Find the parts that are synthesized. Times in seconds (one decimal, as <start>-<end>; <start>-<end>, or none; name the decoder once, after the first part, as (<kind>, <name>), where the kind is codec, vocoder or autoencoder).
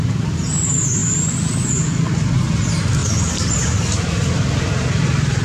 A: none